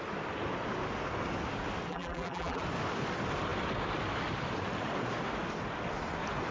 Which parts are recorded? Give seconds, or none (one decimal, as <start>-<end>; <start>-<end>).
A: 0.0-1.9; 2.6-6.5